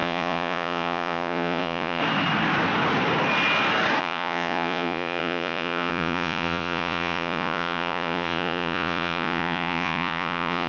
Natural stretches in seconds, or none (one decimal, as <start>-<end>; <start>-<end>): 2.0-4.0